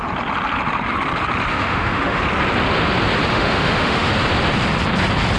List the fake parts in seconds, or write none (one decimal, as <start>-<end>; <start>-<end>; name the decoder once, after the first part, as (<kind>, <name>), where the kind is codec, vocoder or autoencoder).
1.5-2.2 (autoencoder, DAC-VAE); 3.3-4.1